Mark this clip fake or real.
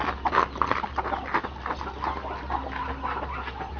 real